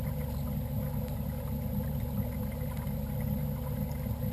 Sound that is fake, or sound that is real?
real